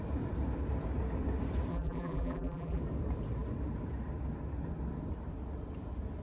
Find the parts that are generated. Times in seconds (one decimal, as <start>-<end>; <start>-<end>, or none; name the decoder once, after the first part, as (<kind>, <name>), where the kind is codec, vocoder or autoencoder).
1.7-2.8 (vocoder, BigVGAN v2)